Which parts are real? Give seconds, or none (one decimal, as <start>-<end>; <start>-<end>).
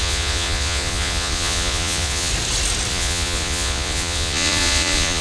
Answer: 2.3-2.9